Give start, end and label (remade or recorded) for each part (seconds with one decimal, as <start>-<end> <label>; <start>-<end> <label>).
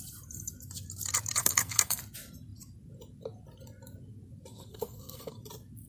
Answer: 0.0-1.4 recorded; 1.4-2.0 remade; 2.0-4.5 recorded; 4.5-5.4 remade; 5.4-5.9 recorded